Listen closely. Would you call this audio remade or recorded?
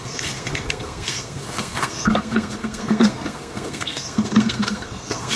remade